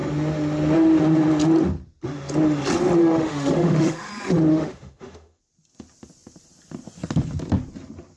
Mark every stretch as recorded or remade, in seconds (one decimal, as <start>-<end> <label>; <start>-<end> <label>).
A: 0.0-3.0 recorded; 3.0-4.1 remade; 4.1-4.5 recorded; 4.5-5.4 remade; 5.4-8.2 recorded